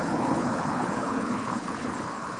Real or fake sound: fake